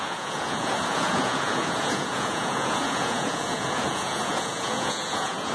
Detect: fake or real fake